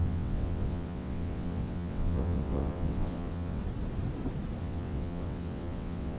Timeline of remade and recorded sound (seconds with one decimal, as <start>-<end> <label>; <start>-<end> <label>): 0.0-3.6 remade; 3.6-4.6 recorded; 4.6-6.2 remade